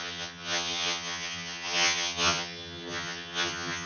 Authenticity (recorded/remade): remade